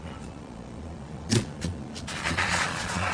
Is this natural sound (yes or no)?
no